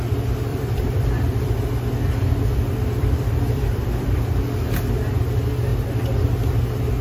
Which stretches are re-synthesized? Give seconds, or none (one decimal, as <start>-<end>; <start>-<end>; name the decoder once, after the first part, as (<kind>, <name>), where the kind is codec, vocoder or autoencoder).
0.5-4.2 (vocoder, BigVGAN v2); 5.7-6.2